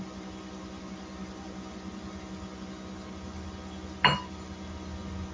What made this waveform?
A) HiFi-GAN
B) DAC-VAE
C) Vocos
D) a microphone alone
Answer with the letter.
D